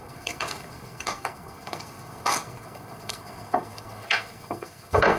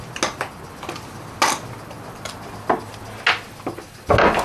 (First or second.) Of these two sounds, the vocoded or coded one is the first